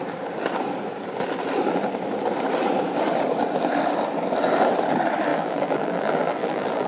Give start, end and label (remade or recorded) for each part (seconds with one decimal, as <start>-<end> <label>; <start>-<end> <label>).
0.0-5.3 recorded; 5.3-6.9 remade